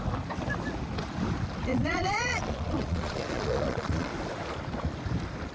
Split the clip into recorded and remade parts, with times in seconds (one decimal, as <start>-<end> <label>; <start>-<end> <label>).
0.0-1.7 recorded; 1.7-4.1 remade; 4.1-5.5 recorded